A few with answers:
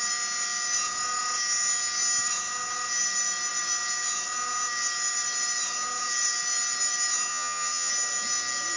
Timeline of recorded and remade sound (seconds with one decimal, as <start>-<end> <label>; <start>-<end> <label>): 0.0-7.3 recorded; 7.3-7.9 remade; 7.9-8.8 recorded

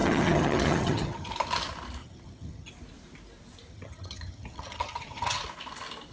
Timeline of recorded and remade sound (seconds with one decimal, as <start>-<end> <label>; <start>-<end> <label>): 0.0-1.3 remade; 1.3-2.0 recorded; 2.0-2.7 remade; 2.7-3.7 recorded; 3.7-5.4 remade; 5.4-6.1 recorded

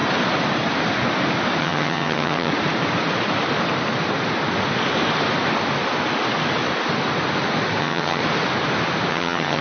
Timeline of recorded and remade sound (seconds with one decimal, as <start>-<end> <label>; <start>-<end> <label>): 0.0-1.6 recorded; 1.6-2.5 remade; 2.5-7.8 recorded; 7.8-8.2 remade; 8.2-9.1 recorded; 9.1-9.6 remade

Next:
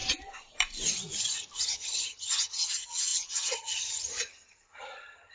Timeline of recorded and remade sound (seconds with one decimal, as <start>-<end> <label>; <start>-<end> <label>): 0.0-1.6 recorded; 1.6-5.3 remade

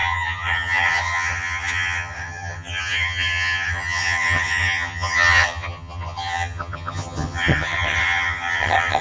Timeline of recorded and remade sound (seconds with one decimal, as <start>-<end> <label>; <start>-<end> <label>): 0.0-9.0 remade

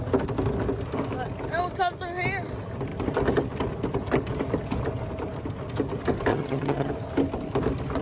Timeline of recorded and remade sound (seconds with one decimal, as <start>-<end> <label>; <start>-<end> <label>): 0.0-6.3 recorded; 6.3-6.9 remade; 6.9-8.0 recorded